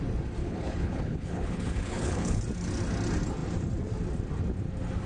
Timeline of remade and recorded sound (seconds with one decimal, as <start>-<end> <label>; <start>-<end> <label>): 0.0-0.4 recorded; 0.4-2.4 remade; 2.4-5.1 recorded